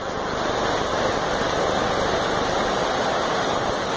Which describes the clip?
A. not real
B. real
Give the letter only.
B